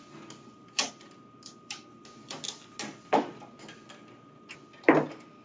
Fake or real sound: real